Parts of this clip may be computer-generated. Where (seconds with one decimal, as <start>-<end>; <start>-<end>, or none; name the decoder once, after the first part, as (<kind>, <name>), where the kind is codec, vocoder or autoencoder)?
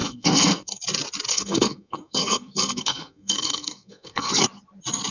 0.0-0.8 (codec, SNAC); 1.3-4.3